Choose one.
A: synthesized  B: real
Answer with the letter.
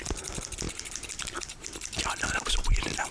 B